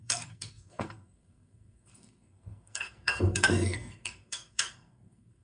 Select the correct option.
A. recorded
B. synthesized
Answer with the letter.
B